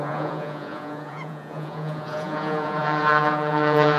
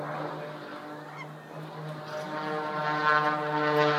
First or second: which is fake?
first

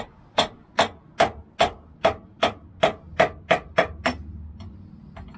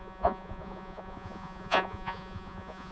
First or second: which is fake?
second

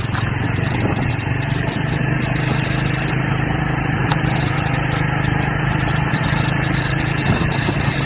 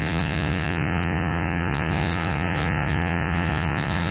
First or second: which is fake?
second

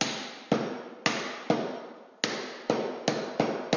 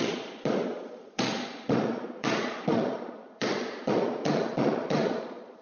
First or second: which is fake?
second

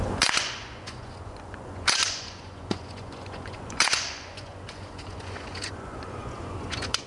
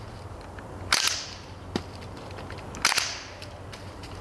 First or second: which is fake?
first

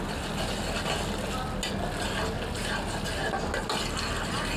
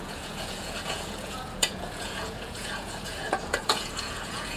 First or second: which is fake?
second